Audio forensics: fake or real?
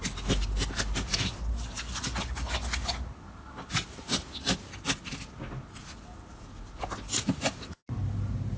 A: real